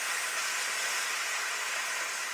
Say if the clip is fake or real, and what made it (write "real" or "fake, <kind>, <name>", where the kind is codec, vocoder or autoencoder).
real